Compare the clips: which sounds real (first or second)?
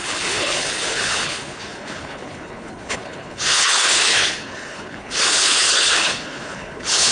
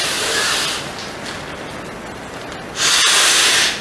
second